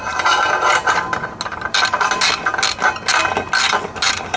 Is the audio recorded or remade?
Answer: recorded